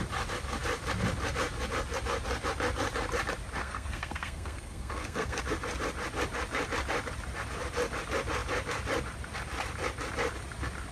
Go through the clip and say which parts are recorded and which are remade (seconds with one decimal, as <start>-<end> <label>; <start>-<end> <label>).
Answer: 0.0-3.6 recorded; 3.6-5.4 remade; 5.4-10.9 recorded